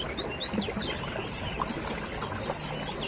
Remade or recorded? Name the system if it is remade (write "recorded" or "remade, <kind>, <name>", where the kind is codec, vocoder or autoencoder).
recorded